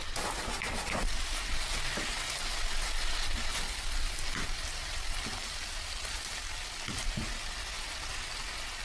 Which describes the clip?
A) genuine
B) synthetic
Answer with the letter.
A